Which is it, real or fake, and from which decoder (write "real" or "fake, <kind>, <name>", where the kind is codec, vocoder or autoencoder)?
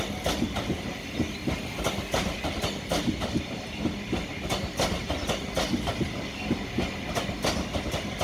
real